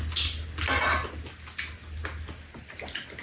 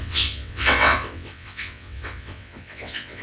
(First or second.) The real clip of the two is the first